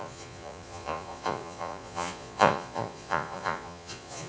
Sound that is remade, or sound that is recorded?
remade